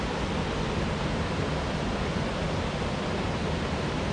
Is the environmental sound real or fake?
real